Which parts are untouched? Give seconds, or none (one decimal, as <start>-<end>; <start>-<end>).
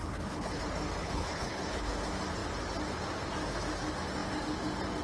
0.6-1.0; 1.9-5.0